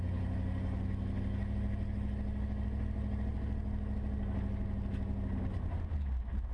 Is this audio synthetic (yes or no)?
no